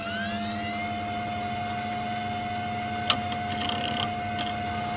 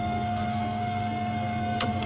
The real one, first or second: first